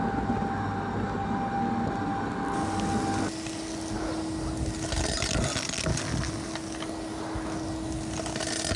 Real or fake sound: real